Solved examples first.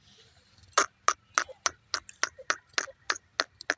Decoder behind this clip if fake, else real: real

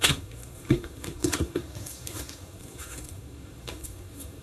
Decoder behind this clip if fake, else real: fake, codec, SNAC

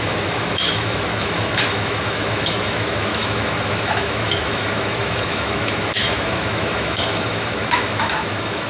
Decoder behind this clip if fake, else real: fake, autoencoder, DAC-VAE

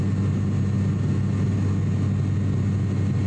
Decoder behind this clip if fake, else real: real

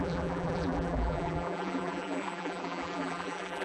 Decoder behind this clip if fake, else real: fake, vocoder, BigVGAN v2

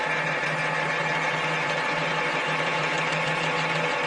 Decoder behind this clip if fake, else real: real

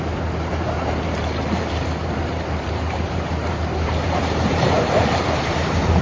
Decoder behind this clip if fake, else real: fake, vocoder, BigVGAN v2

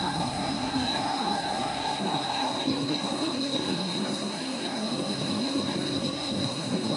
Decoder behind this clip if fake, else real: fake, codec, SNAC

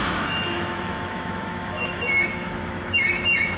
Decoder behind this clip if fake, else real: fake, autoencoder, DAC-VAE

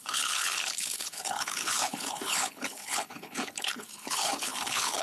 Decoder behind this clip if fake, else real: fake, codec, HILCodec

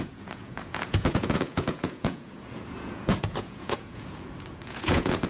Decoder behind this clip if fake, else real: fake, vocoder, Vocos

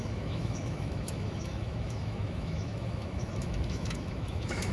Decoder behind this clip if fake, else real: fake, autoencoder, DAC-VAE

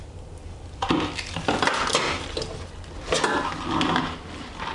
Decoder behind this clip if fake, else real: real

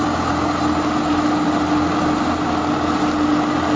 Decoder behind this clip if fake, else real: real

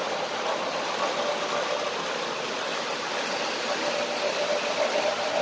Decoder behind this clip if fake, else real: real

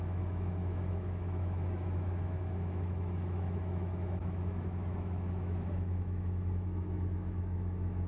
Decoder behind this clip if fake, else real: fake, autoencoder, DAC-VAE